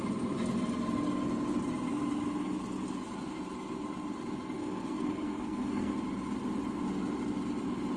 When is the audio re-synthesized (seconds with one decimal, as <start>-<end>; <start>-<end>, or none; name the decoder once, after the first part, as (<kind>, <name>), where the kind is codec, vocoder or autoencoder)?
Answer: 4.6-5.9 (codec, SNAC)